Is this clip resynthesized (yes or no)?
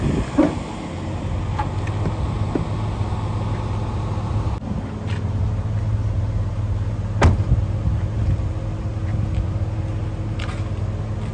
no